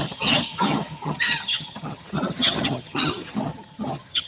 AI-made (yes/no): yes